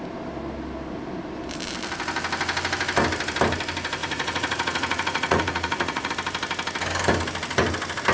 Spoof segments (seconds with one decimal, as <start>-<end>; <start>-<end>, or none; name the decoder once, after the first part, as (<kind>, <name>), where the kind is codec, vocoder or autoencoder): 4.0-6.1 (vocoder, Vocos)